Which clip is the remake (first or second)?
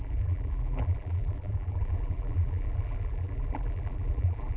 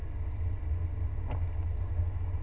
first